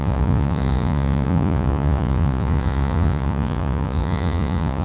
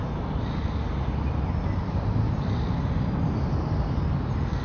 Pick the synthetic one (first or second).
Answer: first